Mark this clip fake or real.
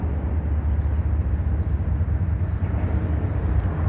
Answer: real